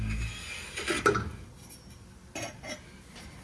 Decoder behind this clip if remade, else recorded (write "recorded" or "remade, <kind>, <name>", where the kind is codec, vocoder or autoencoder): recorded